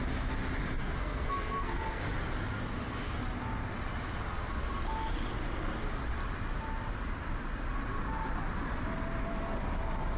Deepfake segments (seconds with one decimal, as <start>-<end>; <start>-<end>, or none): 0.8-2.1